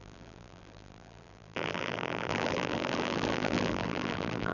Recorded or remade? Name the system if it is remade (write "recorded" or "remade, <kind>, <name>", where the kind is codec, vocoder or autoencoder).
remade, vocoder, BigVGAN v2